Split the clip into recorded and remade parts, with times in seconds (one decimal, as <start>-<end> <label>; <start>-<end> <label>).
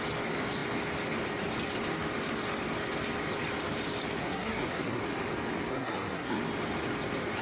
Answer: 0.0-4.2 recorded; 4.2-5.0 remade; 5.0-5.7 recorded; 5.7-6.4 remade; 6.4-7.4 recorded